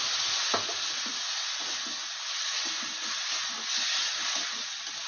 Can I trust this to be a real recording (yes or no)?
yes